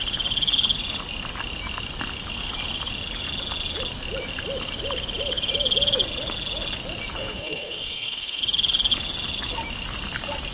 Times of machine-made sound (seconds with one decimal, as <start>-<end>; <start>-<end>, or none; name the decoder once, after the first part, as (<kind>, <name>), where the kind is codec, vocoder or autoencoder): 7.2-8.4 (codec, SNAC)